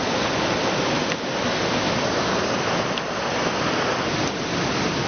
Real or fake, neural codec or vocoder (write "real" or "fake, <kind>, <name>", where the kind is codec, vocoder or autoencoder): real